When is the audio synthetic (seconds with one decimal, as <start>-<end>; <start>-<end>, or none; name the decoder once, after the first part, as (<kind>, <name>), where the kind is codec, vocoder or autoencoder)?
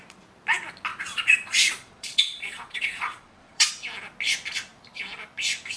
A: 0.9-3.7 (vocoder, Vocos)